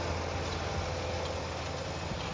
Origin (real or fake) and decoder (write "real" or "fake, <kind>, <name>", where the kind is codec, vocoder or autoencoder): real